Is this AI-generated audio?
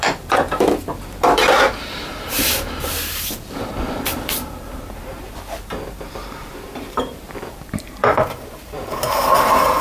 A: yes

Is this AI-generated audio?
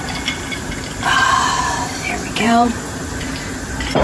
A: yes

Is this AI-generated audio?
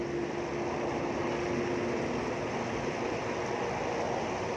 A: no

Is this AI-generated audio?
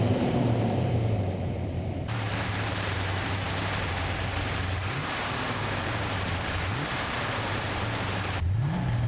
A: yes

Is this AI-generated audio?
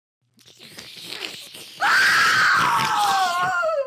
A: no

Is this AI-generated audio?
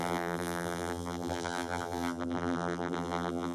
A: yes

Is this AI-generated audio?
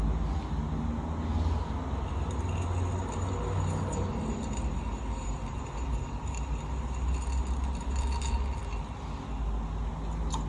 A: no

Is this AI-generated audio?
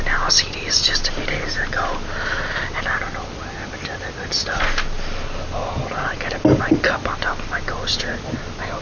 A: no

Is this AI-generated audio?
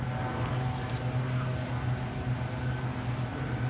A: no